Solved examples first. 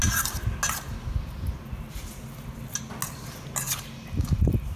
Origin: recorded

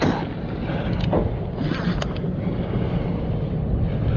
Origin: recorded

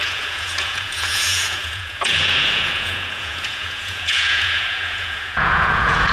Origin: remade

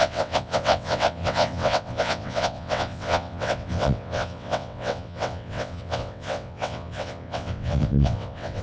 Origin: remade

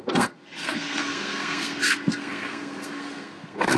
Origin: remade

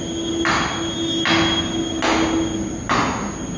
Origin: recorded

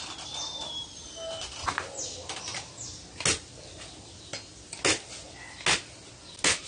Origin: recorded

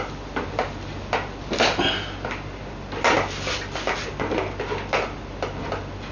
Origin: recorded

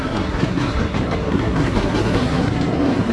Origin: remade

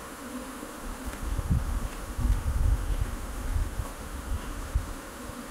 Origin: remade